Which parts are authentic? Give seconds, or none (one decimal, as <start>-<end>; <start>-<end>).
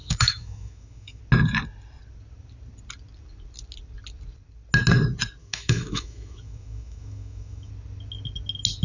1.2-5.4; 7.7-8.8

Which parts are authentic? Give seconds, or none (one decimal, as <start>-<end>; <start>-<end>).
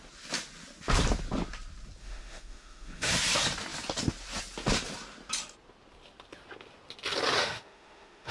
0.0-2.0; 3.1-7.4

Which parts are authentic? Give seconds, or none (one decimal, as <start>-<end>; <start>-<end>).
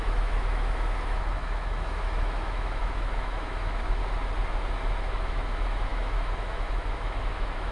4.0-5.0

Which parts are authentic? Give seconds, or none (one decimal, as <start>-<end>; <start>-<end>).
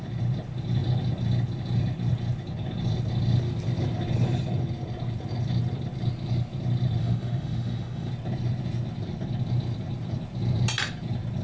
0.0-7.0; 8.1-11.4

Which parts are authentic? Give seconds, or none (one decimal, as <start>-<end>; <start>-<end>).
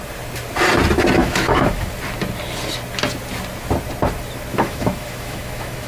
0.0-1.2; 1.9-4.5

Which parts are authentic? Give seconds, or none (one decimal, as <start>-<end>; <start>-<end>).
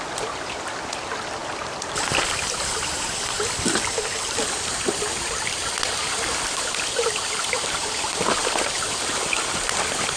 0.0-10.2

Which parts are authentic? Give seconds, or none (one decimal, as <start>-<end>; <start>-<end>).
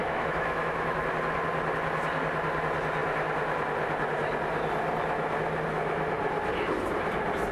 1.0-7.5